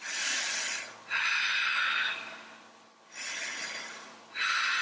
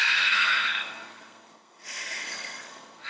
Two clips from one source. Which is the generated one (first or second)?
second